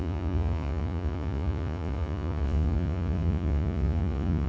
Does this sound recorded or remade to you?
remade